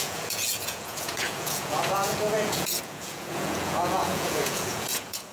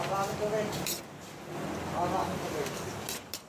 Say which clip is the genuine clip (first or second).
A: second